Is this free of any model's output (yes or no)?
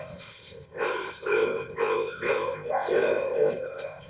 no